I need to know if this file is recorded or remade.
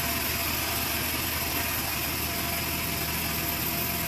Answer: recorded